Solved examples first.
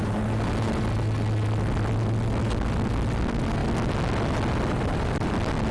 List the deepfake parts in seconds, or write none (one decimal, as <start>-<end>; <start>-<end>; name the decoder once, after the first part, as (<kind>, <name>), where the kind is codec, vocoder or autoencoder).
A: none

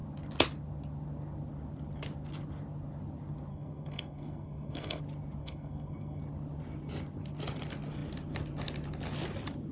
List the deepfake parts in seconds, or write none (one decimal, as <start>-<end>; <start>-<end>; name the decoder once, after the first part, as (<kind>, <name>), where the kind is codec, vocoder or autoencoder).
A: 3.5-5.0 (codec, SNAC); 5.4-6.2

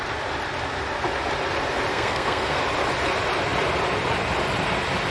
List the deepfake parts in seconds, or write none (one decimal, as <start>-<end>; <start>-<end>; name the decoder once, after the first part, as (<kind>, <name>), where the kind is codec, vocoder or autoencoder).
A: 1.9-2.6 (codec, SNAC)